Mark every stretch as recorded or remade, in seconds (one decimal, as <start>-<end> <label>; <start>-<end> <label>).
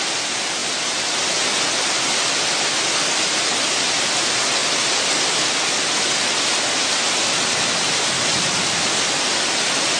0.0-10.0 recorded